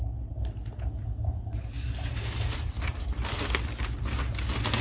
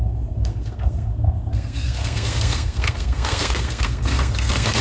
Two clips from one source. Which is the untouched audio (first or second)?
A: first